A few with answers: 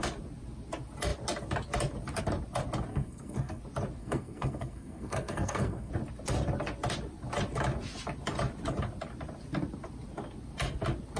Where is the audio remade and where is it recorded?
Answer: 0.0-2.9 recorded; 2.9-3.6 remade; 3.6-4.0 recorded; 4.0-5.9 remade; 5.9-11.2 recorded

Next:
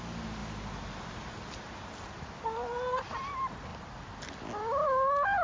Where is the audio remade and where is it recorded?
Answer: 0.0-5.4 recorded

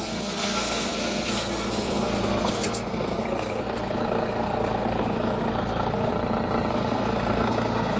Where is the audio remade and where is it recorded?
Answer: 0.0-6.1 remade; 6.1-6.7 recorded; 6.7-8.0 remade

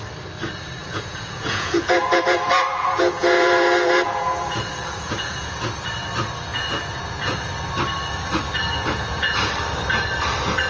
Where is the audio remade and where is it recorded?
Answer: 0.0-0.8 recorded; 0.8-5.6 remade; 5.6-6.5 recorded; 6.5-7.5 remade; 7.5-8.7 recorded; 8.7-9.5 remade; 9.5-10.7 recorded

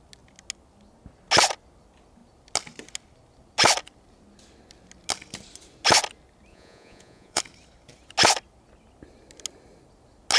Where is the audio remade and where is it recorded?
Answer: 0.0-6.5 recorded; 6.5-7.4 remade; 7.4-10.4 recorded

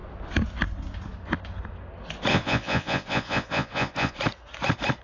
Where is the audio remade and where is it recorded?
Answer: 0.0-2.3 recorded; 2.3-4.2 remade; 4.2-5.0 recorded

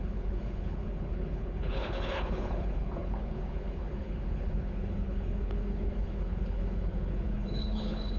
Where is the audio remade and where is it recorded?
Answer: 0.0-8.2 remade